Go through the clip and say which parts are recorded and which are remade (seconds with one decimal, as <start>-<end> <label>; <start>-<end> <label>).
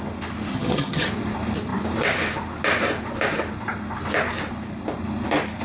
0.0-0.5 recorded; 0.5-1.1 remade; 1.1-5.6 recorded